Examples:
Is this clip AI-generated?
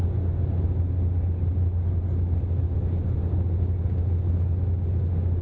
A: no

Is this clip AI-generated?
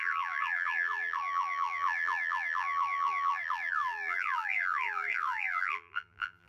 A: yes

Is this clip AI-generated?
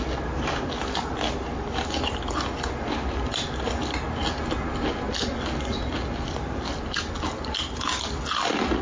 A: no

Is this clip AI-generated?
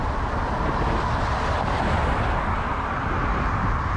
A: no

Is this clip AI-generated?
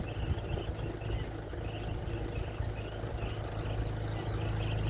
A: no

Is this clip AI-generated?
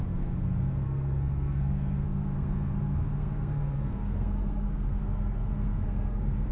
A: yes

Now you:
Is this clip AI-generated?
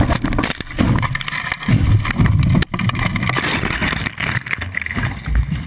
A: no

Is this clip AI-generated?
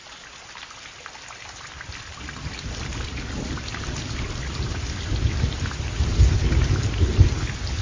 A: no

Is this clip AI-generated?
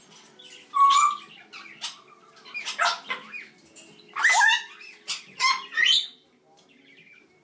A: no